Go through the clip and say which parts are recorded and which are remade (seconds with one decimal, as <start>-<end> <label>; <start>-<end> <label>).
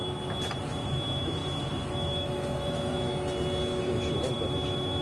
0.0-0.6 recorded; 0.6-3.1 remade; 3.1-3.8 recorded; 3.8-5.0 remade